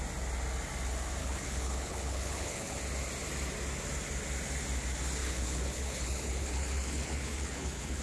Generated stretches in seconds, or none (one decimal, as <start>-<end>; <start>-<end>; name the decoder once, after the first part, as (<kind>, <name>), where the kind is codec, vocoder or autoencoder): 1.2-2.8 (codec, HILCodec); 5.2-8.0